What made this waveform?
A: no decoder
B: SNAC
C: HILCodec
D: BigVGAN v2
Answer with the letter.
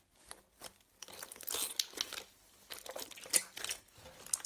A